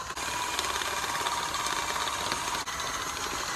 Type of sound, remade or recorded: recorded